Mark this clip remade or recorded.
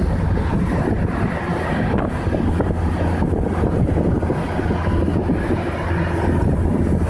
recorded